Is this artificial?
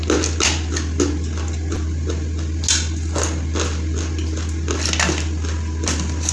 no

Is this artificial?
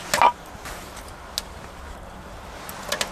no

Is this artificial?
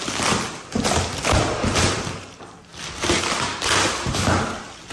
yes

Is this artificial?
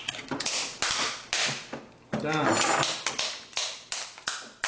no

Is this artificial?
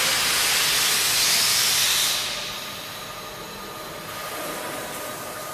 no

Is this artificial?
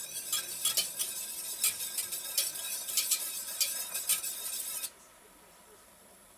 yes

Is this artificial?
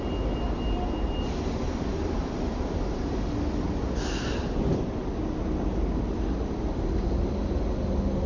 no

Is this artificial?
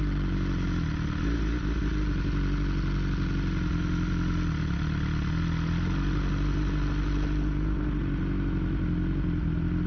no